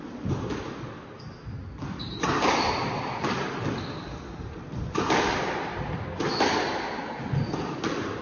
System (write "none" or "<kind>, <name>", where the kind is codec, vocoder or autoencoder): none